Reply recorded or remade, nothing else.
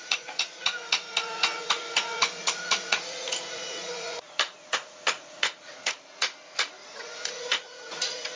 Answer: remade